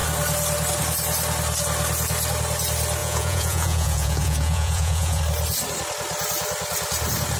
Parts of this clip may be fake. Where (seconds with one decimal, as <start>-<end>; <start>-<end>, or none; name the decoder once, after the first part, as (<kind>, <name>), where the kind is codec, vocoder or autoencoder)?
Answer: 3.0-5.2 (vocoder, Vocos)